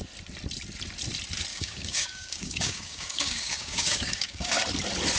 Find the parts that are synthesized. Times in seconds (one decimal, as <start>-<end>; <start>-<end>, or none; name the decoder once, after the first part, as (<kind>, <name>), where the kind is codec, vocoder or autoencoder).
1.5-4.6 (codec, DAC)